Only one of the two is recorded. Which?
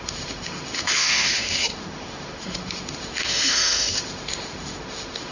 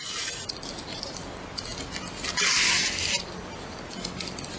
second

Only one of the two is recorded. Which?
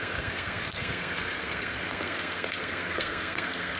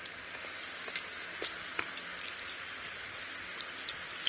second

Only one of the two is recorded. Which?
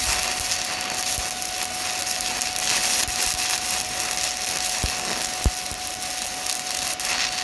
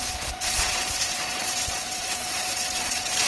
first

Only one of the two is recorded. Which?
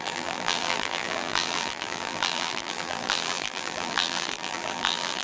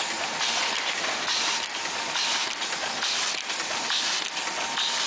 second